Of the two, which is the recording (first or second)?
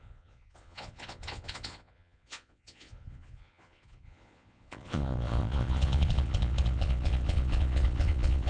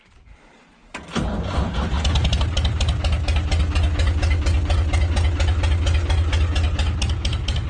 second